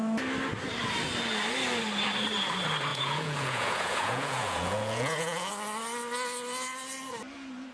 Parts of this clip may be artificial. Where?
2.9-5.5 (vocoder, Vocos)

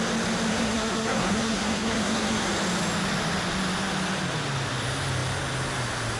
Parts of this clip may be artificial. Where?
0.5-2.5 (codec, SNAC)

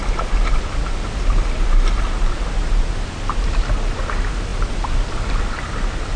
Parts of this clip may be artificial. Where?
none